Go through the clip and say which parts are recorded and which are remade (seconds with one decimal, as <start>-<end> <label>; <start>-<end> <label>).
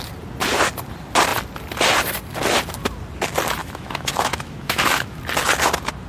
0.0-3.6 recorded; 3.6-5.2 remade; 5.2-6.1 recorded